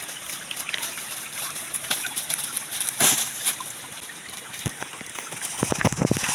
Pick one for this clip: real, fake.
real